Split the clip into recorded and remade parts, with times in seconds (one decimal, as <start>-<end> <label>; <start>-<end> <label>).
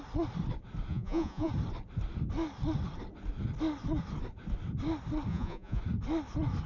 0.0-0.9 recorded; 0.9-1.5 remade; 1.5-5.3 recorded; 5.3-5.8 remade; 5.8-6.7 recorded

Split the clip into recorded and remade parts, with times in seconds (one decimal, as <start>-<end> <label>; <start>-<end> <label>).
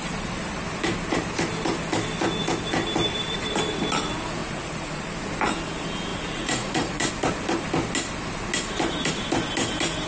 0.0-4.4 recorded; 4.4-5.0 remade; 5.0-6.1 recorded; 6.1-7.1 remade; 7.1-10.1 recorded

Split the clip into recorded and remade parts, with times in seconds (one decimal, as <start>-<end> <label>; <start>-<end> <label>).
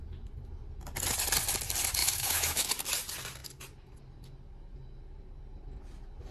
0.0-2.0 recorded; 2.0-2.7 remade; 2.7-6.3 recorded